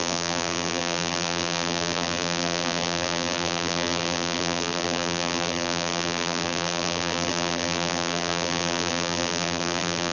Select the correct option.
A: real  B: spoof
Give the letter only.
B